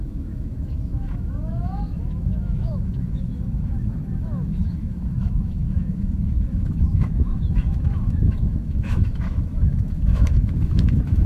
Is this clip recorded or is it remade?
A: remade